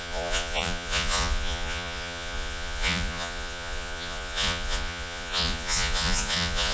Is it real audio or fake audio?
fake